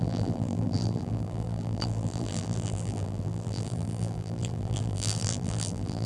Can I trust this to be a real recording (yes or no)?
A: no